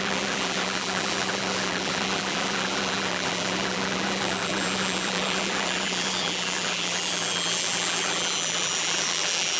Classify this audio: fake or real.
fake